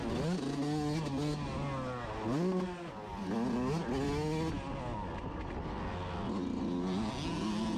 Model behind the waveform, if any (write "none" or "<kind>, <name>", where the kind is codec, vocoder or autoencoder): none